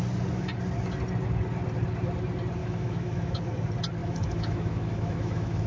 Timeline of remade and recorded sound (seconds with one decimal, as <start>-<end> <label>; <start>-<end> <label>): 0.0-2.6 recorded; 2.6-3.4 remade; 3.4-4.0 recorded; 4.0-5.7 remade

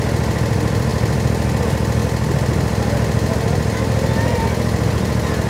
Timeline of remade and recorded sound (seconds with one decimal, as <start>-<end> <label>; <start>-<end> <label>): 0.0-5.5 recorded

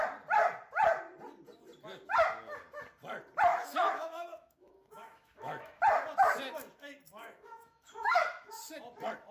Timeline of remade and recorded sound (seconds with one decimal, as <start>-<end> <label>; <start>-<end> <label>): 0.0-3.5 recorded; 3.5-5.8 remade; 5.8-7.1 recorded; 7.1-8.5 remade; 8.5-9.3 recorded

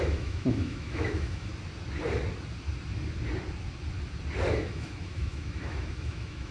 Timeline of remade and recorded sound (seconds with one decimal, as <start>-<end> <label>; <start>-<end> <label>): 0.0-1.5 remade; 1.5-4.5 recorded; 4.5-6.5 remade

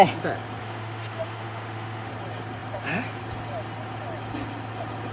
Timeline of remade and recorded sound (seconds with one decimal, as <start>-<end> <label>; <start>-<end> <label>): 0.0-0.6 recorded; 0.6-2.1 remade; 2.1-5.1 recorded

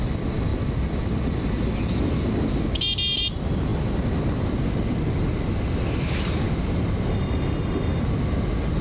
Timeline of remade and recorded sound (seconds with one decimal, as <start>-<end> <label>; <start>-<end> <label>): 0.0-7.1 recorded; 7.1-8.0 remade; 8.0-8.8 recorded